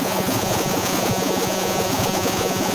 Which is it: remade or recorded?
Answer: remade